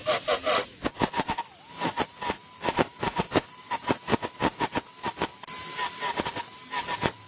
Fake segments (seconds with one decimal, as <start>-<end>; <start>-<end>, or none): none